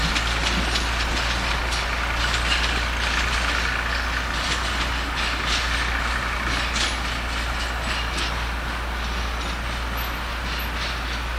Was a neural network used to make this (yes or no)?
no